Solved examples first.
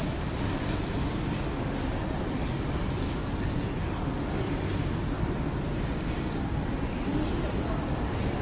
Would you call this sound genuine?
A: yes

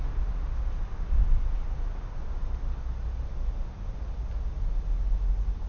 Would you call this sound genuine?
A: yes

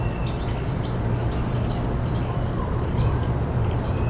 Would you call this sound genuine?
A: yes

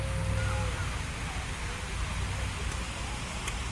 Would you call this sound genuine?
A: yes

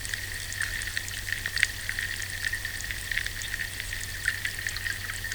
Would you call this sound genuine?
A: yes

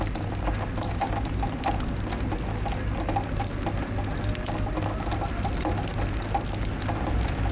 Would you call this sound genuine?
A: yes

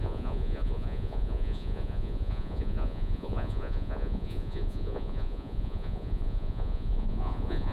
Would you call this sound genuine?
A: no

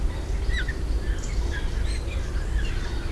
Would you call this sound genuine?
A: yes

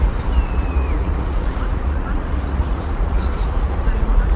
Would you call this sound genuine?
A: no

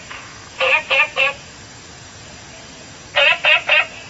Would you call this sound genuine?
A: no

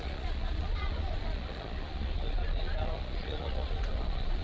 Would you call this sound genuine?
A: no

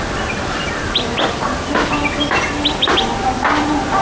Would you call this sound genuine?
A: yes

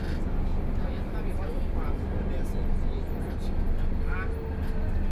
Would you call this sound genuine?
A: yes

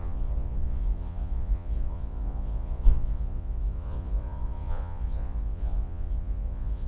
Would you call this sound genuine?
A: no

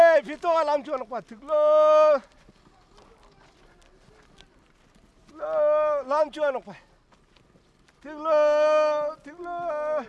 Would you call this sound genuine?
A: yes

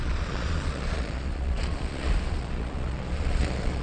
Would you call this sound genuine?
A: no